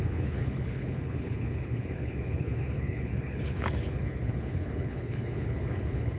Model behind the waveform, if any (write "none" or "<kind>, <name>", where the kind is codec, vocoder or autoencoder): codec, HILCodec